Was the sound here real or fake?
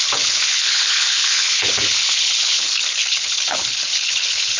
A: fake